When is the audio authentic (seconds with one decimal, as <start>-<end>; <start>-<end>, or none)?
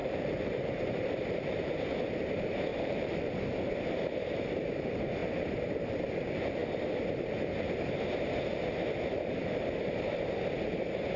1.7-2.7; 3.3-11.2